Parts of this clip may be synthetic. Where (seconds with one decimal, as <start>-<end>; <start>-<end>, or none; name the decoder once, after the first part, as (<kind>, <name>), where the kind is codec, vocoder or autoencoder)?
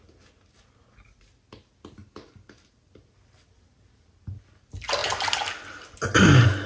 none